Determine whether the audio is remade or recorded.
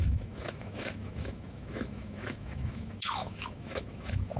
remade